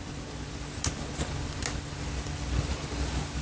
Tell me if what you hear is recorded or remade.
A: recorded